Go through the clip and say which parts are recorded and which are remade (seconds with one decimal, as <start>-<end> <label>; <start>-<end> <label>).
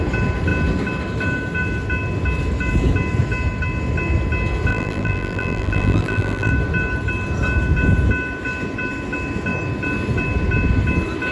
0.0-4.7 recorded; 4.7-6.5 remade; 6.5-11.3 recorded